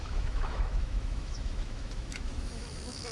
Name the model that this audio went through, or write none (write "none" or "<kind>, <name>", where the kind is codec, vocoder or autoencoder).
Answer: autoencoder, DAC-VAE